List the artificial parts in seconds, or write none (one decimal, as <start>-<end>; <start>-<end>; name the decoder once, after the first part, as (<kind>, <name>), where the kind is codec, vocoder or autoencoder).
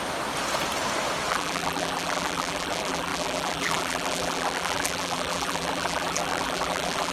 1.3-7.1 (vocoder, BigVGAN v2)